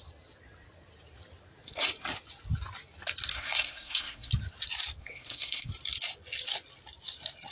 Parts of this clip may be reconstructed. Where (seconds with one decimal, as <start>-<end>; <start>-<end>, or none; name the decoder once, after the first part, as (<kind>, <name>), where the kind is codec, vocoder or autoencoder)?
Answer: 3.3-4.3 (codec, SNAC); 5.0-5.7